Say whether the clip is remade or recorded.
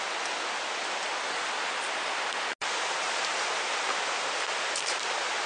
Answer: recorded